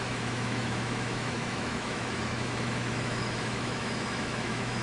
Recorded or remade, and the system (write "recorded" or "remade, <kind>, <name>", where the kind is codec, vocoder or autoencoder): remade, autoencoder, DAC-VAE